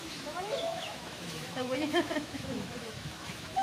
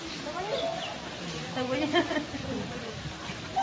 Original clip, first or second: second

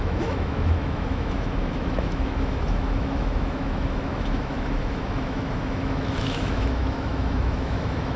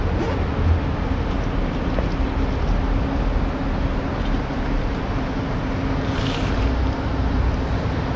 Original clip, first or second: second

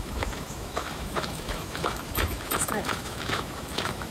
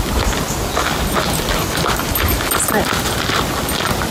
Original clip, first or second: second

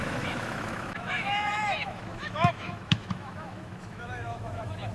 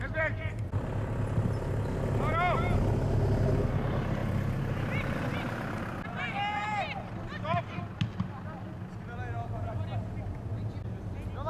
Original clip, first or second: second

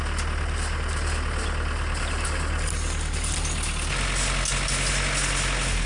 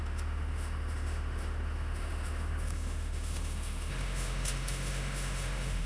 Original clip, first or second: first